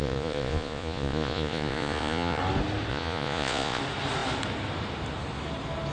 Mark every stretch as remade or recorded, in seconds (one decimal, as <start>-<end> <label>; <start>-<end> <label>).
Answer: 0.0-2.4 remade; 2.4-2.9 recorded; 2.9-3.8 remade; 3.8-5.9 recorded